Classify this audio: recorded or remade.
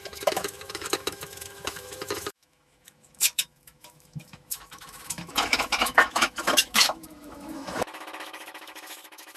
remade